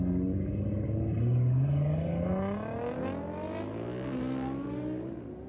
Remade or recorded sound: recorded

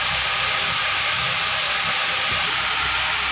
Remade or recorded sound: recorded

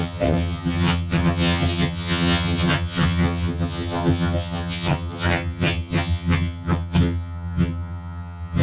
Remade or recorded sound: remade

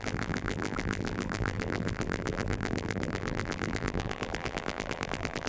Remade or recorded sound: remade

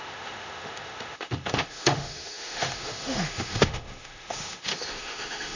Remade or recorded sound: remade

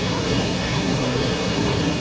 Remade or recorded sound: remade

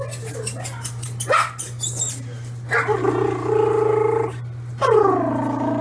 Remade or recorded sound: recorded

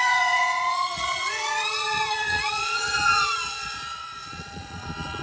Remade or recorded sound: remade